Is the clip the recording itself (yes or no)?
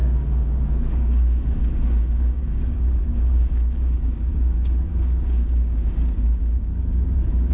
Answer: no